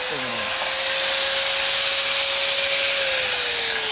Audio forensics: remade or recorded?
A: recorded